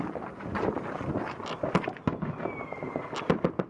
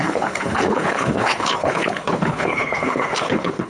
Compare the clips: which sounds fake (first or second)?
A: second